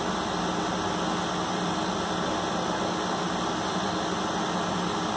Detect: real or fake real